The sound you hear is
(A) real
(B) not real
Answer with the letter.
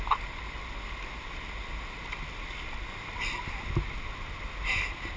A